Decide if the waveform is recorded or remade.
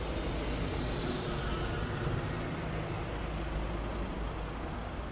recorded